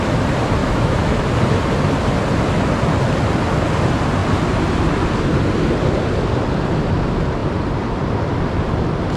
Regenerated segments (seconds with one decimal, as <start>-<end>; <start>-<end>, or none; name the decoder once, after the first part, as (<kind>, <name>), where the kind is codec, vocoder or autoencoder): 0.6-1.2 (autoencoder, DAC-VAE)